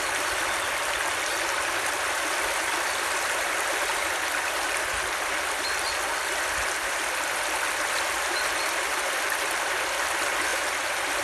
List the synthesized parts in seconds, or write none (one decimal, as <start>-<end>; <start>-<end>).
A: none